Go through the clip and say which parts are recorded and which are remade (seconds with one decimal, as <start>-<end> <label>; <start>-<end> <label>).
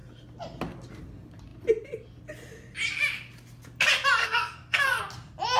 0.0-4.2 recorded; 4.2-5.0 remade; 5.0-5.6 recorded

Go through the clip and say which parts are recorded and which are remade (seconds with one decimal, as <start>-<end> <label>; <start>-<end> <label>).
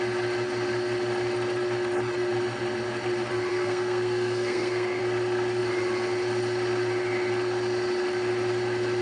0.0-3.5 recorded; 3.5-5.0 remade; 5.0-9.0 recorded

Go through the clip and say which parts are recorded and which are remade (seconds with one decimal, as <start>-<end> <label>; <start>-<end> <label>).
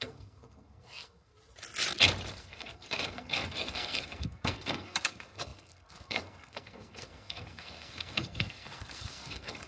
0.0-1.3 remade; 1.3-2.3 recorded; 2.3-9.7 remade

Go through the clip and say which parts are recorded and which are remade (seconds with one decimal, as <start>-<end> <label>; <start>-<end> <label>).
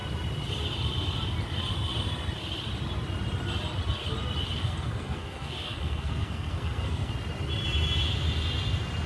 0.0-4.6 recorded; 4.6-7.1 remade; 7.1-9.1 recorded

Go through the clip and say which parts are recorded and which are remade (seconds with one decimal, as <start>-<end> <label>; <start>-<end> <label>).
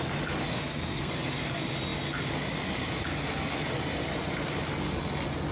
0.0-0.5 recorded; 0.5-1.1 remade; 1.1-5.5 recorded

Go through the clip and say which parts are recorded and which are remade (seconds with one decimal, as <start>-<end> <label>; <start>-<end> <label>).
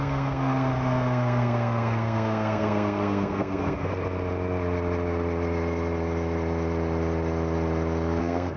0.0-3.9 remade; 3.9-8.2 recorded; 8.2-8.6 remade